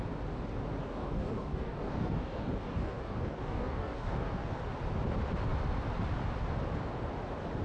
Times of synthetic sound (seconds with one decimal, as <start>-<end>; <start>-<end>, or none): 0.8-4.6

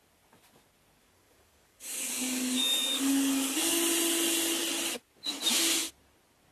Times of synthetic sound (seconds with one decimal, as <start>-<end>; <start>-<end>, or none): 1.0-3.8

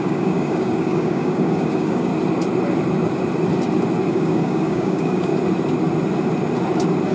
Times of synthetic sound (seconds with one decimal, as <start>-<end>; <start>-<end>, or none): 0.0-2.1; 4.1-5.3

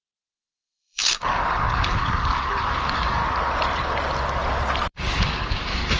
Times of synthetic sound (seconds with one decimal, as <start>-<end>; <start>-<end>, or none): 0.0-3.2; 4.9-6.0

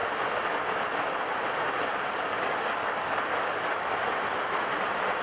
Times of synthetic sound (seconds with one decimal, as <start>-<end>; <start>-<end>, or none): 2.3-3.9

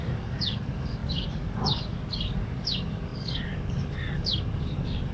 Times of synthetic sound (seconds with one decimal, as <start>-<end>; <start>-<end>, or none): 0.0-5.1